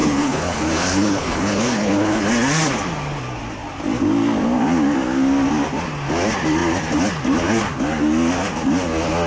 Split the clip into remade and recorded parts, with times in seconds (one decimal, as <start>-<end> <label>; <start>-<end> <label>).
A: 0.0-2.2 remade; 2.2-9.3 recorded